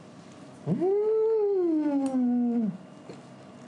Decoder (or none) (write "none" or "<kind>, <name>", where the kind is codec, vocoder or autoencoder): none